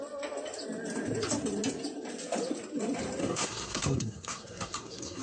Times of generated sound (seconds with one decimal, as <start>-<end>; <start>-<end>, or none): 3.2-5.2